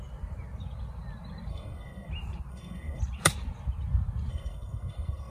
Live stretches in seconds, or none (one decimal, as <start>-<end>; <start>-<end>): 0.0-1.5; 2.1-2.5; 3.0-4.3